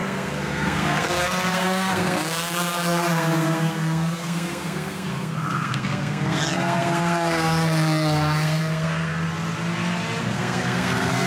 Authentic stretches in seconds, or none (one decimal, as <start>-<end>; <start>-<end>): 9.1-10.2